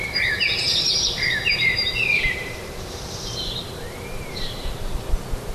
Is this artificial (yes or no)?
yes